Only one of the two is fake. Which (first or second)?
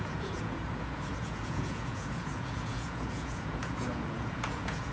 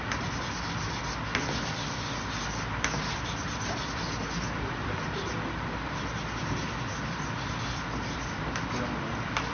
first